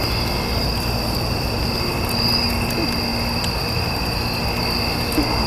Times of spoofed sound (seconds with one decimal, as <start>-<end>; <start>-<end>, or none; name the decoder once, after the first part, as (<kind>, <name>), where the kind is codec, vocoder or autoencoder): 0.0-1.9 (vocoder, BigVGAN v2)